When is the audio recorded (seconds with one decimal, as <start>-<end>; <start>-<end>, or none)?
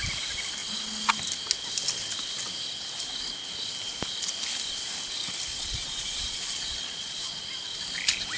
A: 0.0-5.5; 7.4-8.4